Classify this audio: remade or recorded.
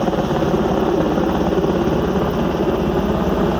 recorded